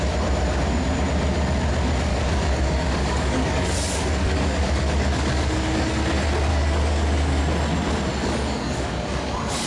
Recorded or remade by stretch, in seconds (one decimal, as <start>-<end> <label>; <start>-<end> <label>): 0.0-2.1 recorded; 2.1-6.0 remade; 6.0-6.5 recorded; 6.5-7.4 remade; 7.4-8.2 recorded; 8.2-9.7 remade